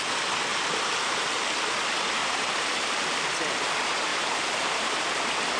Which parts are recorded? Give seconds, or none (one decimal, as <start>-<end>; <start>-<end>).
0.0-0.5; 1.8-2.2; 3.3-4.1; 5.0-5.6